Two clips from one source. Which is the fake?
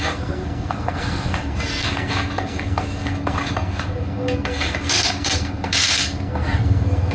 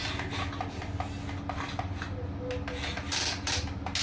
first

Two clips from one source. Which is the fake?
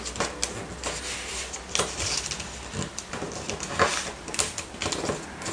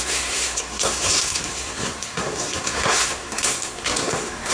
second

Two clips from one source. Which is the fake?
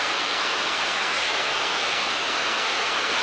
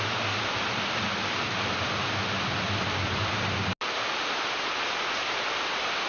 first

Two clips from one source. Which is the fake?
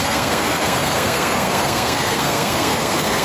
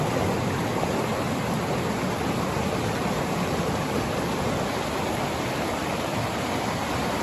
first